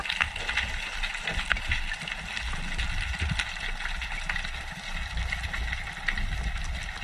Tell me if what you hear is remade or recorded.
recorded